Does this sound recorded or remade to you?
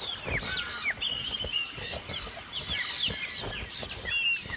recorded